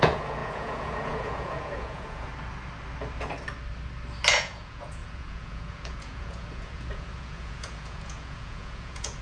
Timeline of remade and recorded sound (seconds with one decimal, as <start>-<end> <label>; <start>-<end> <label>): 0.0-2.3 remade; 2.3-4.3 recorded; 4.3-9.2 remade